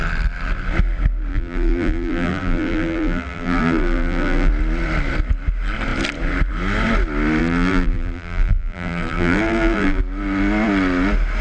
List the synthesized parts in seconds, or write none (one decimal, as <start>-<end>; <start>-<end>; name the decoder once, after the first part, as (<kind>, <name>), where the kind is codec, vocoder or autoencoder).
1.3-4.5 (vocoder, BigVGAN v2); 7.4-10.0